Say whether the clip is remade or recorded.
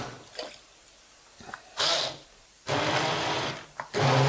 remade